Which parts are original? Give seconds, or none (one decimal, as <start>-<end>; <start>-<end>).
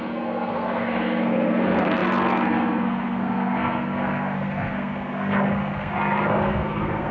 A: none